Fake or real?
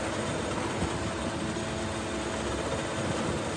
real